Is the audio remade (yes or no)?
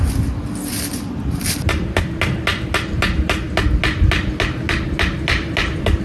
no